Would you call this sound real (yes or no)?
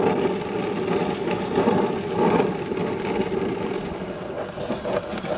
yes